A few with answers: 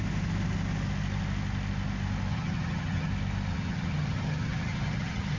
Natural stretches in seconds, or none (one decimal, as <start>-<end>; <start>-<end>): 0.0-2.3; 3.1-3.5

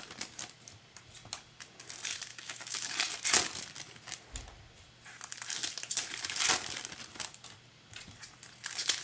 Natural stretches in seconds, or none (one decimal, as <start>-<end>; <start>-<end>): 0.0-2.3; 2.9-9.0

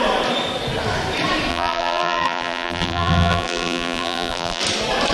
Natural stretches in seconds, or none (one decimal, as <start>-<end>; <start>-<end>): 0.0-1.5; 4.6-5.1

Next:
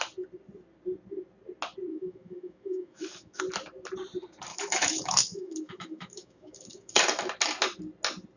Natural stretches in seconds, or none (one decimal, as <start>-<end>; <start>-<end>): 0.0-1.9; 3.4-4.5; 7.0-8.4

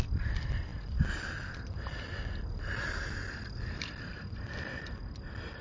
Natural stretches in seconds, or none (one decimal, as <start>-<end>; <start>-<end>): 0.0-5.6